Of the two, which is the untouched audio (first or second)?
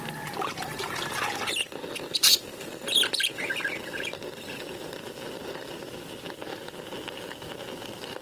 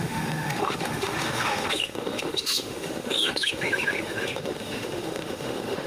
first